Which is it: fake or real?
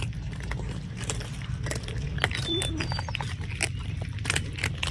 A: real